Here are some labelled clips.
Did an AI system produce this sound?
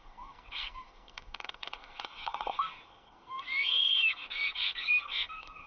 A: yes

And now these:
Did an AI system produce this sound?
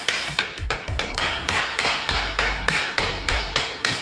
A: yes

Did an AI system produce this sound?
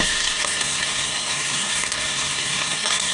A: yes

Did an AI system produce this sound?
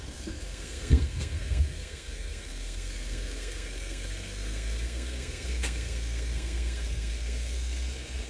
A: yes